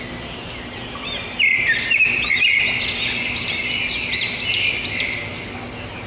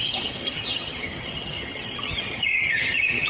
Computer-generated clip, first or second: second